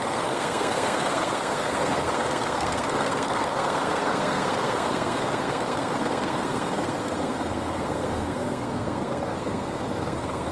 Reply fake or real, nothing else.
fake